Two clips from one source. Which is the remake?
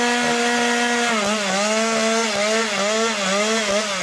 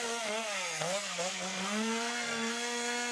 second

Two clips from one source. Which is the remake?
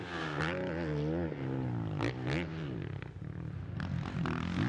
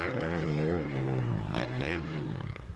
second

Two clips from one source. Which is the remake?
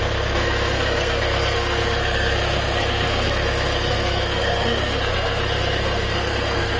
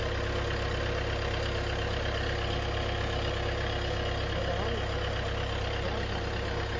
first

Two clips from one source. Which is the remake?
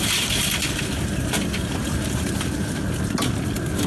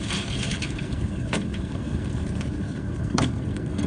second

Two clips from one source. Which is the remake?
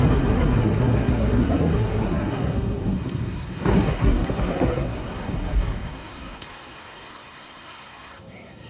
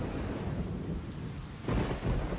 first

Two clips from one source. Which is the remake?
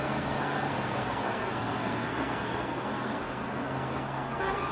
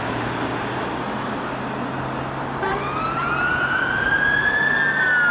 first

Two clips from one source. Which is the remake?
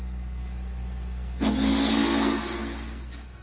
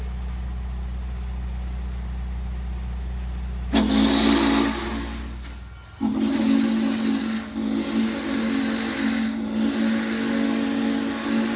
first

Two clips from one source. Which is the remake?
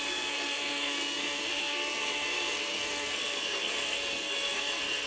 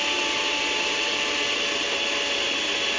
first